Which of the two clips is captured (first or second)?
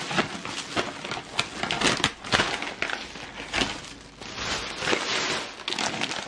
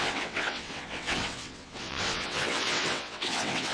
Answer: first